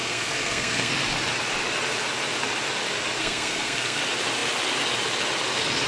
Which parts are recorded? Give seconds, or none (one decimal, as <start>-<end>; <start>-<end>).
0.9-3.2; 4.0-5.9